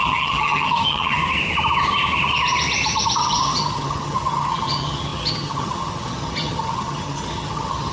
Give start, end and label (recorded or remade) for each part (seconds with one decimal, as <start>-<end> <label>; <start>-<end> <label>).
0.0-1.2 remade; 1.2-3.2 recorded; 3.2-7.9 remade